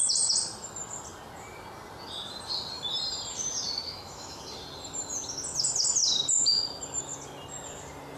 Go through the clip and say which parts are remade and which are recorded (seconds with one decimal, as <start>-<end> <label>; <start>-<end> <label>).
0.0-3.8 recorded; 3.8-4.4 remade; 4.4-8.2 recorded